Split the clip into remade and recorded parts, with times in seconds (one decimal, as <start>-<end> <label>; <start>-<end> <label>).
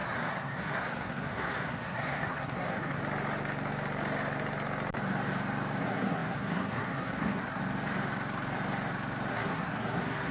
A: 0.0-3.0 remade; 3.0-5.8 recorded; 5.8-7.6 remade; 7.6-9.3 recorded; 9.3-10.3 remade